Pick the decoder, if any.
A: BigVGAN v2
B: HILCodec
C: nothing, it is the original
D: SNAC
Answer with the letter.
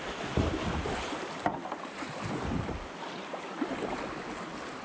A